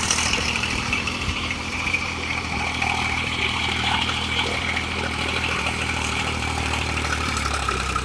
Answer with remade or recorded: remade